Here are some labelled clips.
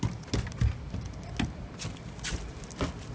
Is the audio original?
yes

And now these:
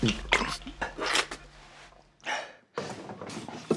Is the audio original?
yes